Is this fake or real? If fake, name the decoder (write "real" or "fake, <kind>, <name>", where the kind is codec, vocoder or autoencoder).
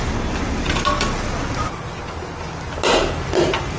real